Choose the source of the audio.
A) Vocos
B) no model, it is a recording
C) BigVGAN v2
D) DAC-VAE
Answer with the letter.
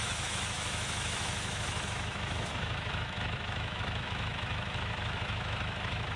D